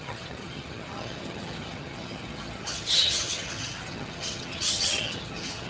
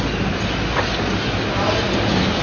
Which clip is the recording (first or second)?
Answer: second